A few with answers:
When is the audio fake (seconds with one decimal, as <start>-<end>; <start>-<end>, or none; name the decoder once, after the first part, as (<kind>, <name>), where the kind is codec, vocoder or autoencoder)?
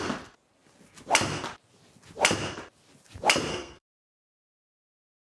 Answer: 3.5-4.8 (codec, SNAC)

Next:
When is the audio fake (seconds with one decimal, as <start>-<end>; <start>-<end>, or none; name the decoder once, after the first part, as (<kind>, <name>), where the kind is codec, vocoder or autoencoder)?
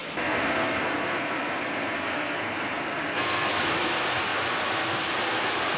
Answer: 0.0-3.5 (codec, SNAC)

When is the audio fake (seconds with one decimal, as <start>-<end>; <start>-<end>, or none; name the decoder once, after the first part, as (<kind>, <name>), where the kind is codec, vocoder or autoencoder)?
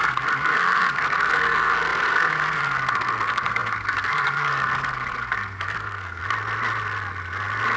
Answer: 0.0-6.2 (codec, SNAC)